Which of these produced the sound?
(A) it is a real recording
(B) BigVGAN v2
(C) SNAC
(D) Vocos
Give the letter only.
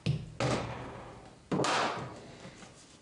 A